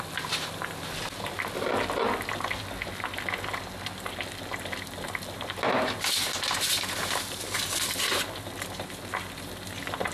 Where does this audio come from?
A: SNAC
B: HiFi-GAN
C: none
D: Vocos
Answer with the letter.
C